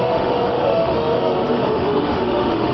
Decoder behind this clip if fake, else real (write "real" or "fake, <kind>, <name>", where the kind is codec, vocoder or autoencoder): fake, autoencoder, DAC-VAE